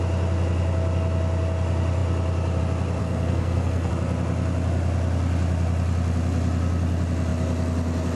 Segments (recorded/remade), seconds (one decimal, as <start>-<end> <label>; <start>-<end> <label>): 0.0-3.0 recorded; 3.0-3.9 remade; 3.9-8.2 recorded